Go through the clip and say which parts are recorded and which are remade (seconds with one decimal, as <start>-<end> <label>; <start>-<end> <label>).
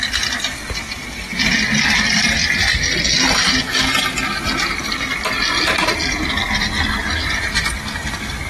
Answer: 0.0-8.5 recorded